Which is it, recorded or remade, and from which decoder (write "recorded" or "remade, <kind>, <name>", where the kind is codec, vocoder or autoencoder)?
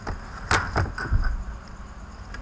recorded